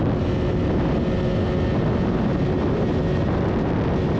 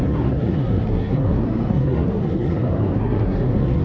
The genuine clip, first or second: first